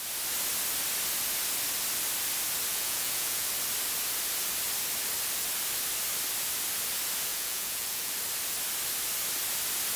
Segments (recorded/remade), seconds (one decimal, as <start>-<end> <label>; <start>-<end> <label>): 0.0-2.7 recorded; 2.7-3.5 remade; 3.5-7.3 recorded; 7.3-8.1 remade; 8.1-10.0 recorded